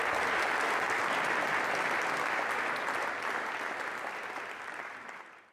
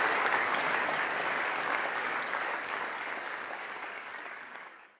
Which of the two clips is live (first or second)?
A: first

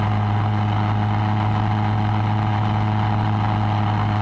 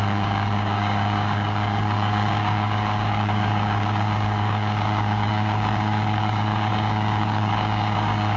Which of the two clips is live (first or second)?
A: first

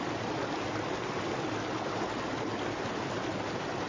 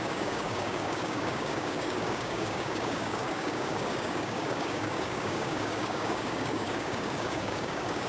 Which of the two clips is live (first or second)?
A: first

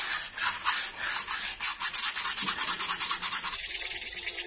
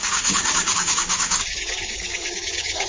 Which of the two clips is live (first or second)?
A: first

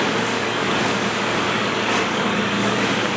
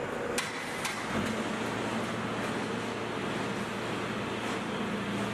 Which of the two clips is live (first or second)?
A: second